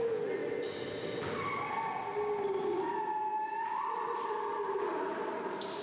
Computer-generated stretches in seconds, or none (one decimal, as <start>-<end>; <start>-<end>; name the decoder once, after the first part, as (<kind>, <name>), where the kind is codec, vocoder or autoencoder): 4.5-5.8 (vocoder, BigVGAN v2)